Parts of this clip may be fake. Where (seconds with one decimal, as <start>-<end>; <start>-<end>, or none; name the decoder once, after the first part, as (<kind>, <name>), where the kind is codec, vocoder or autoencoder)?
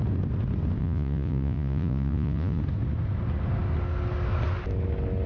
0.8-2.6 (vocoder, Vocos)